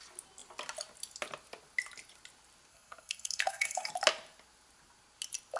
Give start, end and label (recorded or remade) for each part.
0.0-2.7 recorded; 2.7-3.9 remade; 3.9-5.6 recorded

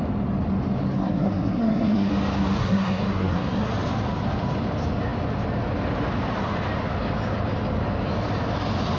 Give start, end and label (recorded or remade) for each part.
0.0-1.0 recorded; 1.0-2.1 remade; 2.1-2.6 recorded; 2.6-3.7 remade; 3.7-9.0 recorded

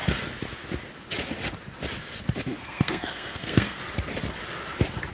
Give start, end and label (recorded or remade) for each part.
0.0-2.6 recorded; 2.6-3.8 remade; 3.8-5.1 recorded

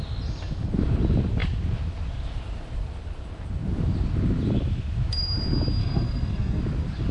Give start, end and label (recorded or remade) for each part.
0.0-5.8 recorded; 5.8-6.6 remade; 6.6-7.1 recorded